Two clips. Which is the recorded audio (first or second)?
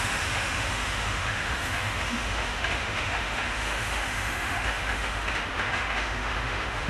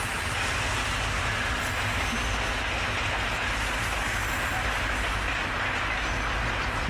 second